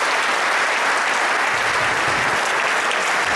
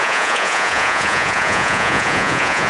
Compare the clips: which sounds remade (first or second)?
second